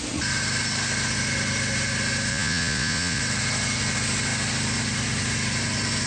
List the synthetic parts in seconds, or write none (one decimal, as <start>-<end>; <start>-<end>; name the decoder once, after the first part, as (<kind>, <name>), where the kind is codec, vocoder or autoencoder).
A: 2.3-3.2 (vocoder, Vocos)